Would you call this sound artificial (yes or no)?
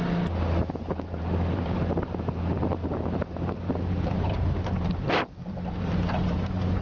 yes